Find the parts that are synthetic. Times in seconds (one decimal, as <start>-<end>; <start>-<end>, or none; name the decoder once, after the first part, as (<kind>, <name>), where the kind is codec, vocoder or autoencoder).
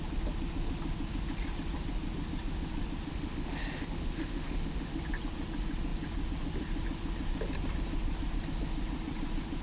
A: 3.1-5.0 (autoencoder, DAC-VAE)